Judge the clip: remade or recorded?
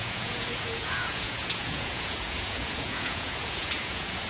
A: remade